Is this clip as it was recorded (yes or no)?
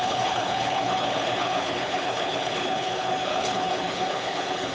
no